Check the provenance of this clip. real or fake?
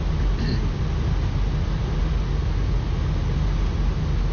real